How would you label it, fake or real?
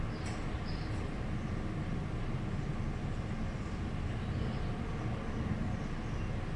real